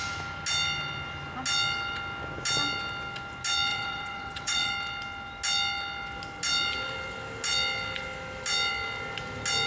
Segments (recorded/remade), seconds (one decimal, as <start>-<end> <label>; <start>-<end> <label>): 0.0-3.7 recorded; 3.7-4.7 remade; 4.7-9.7 recorded